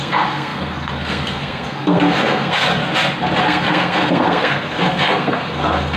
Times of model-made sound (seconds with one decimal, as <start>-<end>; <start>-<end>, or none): 0.0-2.8; 3.4-6.0